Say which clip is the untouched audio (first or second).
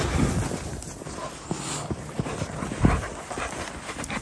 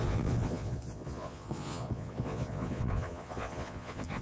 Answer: first